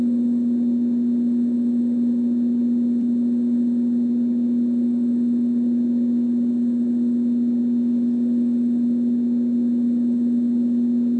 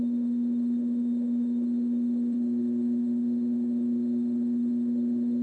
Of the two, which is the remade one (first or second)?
second